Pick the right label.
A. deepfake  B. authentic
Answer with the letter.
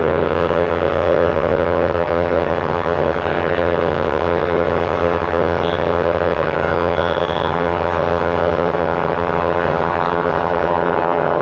A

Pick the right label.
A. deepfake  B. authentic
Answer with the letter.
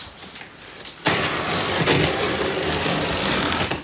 B